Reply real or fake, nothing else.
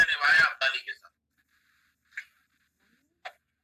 real